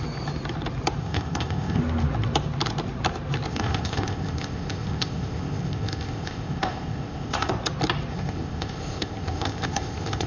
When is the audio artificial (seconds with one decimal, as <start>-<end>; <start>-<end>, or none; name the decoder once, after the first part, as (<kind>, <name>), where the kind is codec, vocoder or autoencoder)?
1.0-1.8 (codec, ZipCodec); 3.5-7.5; 8.1-10.3